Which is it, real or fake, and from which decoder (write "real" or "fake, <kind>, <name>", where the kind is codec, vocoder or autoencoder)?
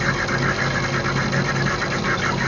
real